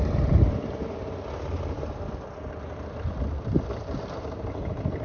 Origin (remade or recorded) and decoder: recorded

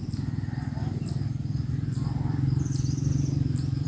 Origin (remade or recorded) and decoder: recorded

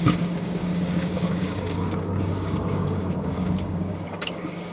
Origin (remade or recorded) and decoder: remade, codec, DAC